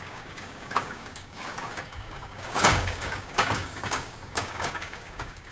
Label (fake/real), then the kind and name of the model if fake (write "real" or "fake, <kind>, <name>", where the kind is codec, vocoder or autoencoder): fake, codec, DAC